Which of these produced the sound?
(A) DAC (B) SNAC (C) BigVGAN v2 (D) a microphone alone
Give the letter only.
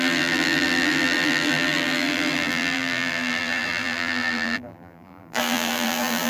C